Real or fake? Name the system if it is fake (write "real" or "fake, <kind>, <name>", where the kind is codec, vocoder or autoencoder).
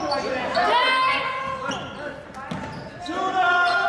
real